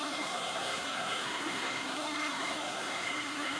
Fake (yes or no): yes